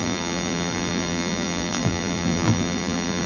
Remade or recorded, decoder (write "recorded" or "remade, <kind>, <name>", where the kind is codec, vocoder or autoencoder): remade, vocoder, BigVGAN v2